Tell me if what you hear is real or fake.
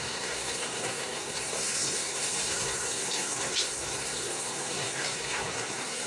fake